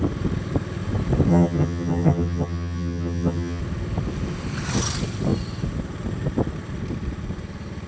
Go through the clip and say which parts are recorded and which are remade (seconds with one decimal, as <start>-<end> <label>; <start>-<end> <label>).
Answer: 0.0-1.3 recorded; 1.3-3.6 remade; 3.6-7.9 recorded